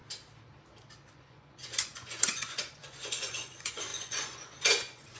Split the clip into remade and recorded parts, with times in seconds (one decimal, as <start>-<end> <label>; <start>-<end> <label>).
0.0-1.1 recorded; 1.1-5.2 remade